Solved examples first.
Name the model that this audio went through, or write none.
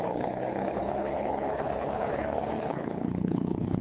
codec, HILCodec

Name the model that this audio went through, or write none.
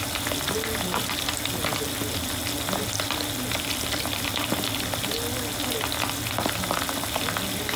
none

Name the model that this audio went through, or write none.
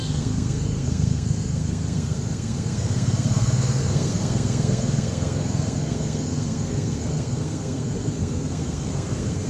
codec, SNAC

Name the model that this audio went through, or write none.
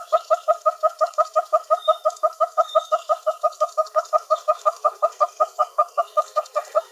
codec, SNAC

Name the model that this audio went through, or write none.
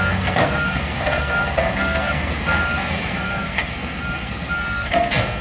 codec, SNAC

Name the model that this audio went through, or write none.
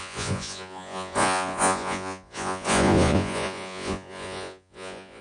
vocoder, Vocos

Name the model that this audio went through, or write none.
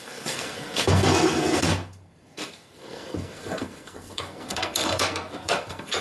codec, SNAC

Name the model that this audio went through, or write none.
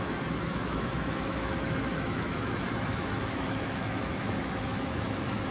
autoencoder, DAC-VAE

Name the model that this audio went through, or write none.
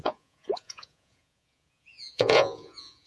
vocoder, Vocos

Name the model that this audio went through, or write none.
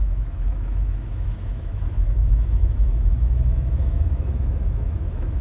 autoencoder, DAC-VAE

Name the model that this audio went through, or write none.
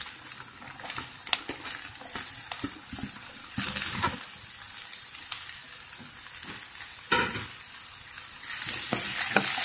none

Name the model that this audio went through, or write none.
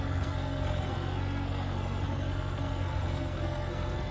codec, SNAC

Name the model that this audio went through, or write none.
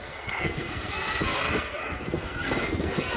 codec, SNAC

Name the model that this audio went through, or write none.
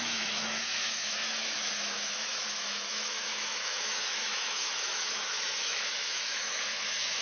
autoencoder, DAC-VAE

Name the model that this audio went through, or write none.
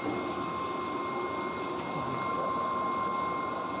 none